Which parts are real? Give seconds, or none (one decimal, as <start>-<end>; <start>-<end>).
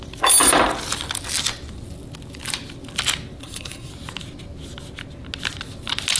0.0-3.4; 3.9-6.2